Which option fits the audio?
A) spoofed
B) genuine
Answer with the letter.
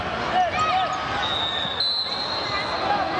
B